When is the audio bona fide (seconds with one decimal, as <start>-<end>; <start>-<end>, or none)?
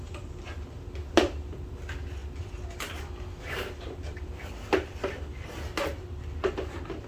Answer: 0.0-7.1